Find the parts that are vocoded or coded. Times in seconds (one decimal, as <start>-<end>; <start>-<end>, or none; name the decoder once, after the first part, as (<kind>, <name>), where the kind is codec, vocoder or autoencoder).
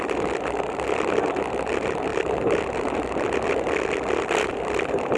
0.0-5.2 (vocoder, BigVGAN v2)